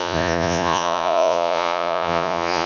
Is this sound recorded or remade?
remade